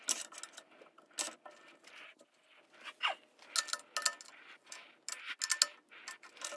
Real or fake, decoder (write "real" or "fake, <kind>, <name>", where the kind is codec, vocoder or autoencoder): real